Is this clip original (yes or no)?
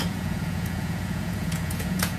no